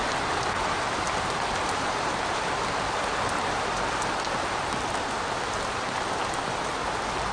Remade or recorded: recorded